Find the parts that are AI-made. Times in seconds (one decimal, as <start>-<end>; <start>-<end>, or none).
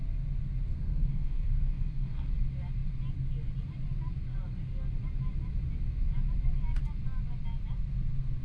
0.7-2.3